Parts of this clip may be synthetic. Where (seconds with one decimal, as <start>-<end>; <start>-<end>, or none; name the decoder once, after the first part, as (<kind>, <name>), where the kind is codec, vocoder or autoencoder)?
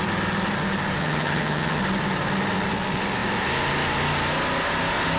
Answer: 1.0-1.8 (vocoder, HiFi-GAN)